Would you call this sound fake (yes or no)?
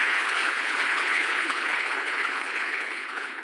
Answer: yes